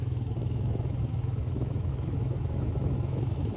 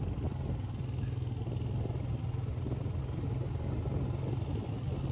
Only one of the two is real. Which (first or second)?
second